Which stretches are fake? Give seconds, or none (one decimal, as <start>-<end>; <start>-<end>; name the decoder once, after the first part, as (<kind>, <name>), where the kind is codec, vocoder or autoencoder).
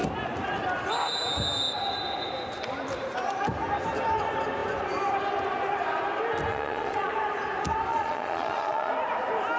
6.5-7.1 (vocoder, Vocos); 7.9-8.9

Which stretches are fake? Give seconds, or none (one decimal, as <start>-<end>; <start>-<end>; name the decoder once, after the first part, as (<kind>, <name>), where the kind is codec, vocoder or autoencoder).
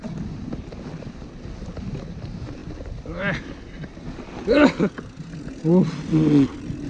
none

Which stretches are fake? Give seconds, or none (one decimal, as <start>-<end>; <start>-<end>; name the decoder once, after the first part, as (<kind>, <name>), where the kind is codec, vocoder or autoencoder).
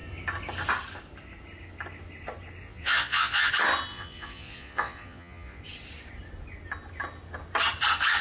2.6-3.5 (vocoder, Vocos); 3.9-5.6